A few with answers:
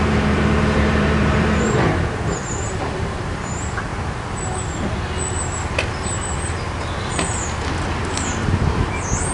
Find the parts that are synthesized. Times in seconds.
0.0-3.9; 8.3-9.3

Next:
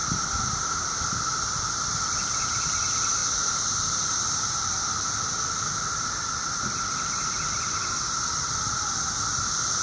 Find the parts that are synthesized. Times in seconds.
0.0-3.2; 3.9-9.8

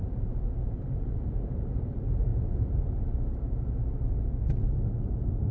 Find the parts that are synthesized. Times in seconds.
0.0-2.3; 5.1-5.5

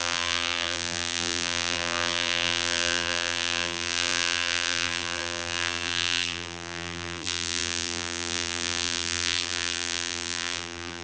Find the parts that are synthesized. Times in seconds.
0.0-11.0

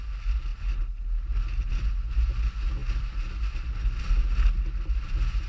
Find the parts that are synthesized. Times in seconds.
none

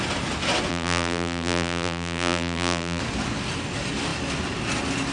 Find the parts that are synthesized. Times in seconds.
0.7-3.0

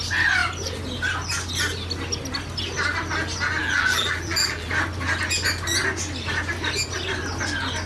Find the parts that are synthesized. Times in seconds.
3.6-4.7

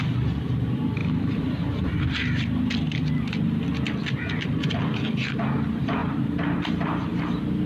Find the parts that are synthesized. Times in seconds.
1.0-3.0; 6.0-7.2